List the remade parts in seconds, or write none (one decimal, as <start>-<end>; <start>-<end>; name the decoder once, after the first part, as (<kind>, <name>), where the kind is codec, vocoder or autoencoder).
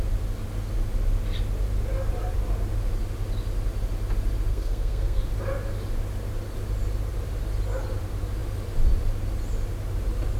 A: 4.5-5.2 (codec, SNAC)